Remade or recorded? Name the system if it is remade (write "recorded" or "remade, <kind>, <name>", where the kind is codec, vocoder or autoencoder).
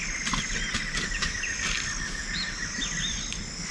recorded